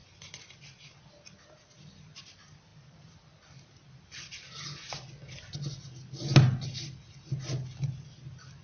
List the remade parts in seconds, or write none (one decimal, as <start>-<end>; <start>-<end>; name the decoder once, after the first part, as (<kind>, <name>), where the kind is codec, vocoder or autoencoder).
none